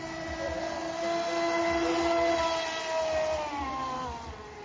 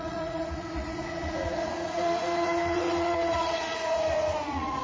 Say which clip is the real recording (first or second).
first